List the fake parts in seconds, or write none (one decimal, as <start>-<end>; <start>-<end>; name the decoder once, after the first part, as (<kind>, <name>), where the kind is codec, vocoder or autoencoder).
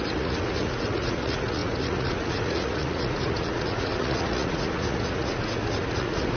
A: 0.0-6.4 (vocoder, Vocos)